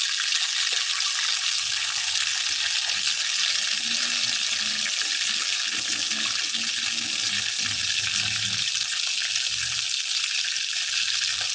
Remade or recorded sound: recorded